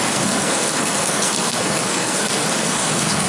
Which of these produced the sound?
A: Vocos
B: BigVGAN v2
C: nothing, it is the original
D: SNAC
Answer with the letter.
D